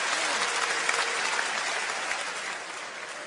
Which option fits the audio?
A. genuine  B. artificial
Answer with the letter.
A